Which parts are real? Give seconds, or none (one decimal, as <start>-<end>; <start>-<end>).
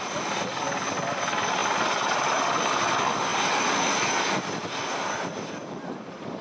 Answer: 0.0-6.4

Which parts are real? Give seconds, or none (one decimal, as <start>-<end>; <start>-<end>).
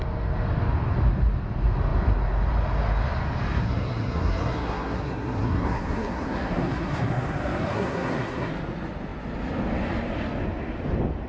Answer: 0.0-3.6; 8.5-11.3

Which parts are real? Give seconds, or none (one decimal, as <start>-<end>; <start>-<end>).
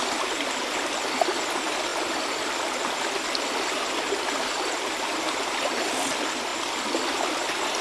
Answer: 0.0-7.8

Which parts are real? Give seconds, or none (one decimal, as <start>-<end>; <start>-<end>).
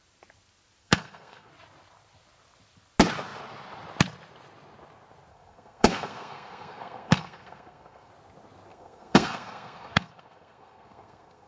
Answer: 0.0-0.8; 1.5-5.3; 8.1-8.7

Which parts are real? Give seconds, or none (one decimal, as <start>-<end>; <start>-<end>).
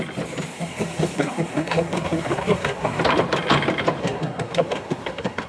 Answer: 0.0-0.5; 3.0-4.0